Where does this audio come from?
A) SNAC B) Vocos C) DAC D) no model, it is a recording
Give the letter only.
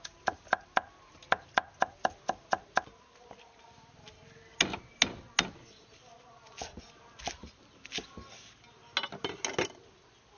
D